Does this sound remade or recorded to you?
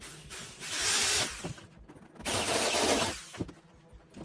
recorded